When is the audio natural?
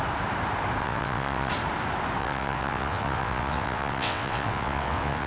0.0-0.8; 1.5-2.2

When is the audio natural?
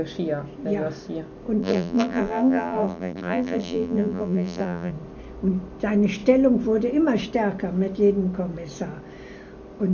0.0-1.6; 4.9-9.9